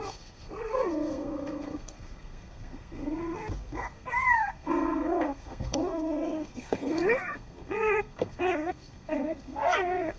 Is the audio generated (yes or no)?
yes